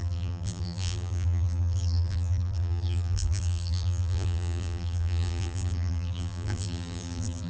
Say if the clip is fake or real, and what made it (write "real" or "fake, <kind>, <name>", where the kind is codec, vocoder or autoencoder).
fake, vocoder, BigVGAN v2